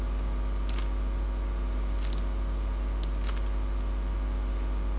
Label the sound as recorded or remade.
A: recorded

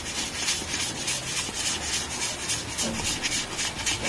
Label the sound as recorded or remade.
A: recorded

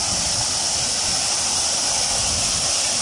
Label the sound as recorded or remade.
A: recorded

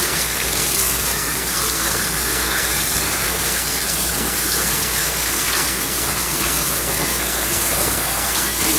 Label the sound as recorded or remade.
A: remade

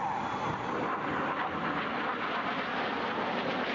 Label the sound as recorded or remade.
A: recorded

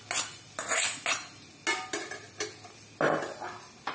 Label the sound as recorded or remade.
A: recorded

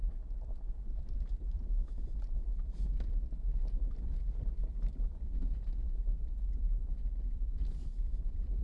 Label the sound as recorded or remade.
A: remade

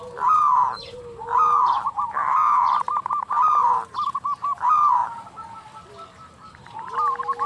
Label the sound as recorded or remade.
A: recorded